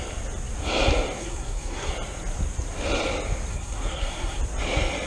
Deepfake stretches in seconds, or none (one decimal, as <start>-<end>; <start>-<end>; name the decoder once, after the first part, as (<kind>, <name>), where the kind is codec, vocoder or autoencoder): 1.2-1.9 (codec, SNAC); 3.5-4.4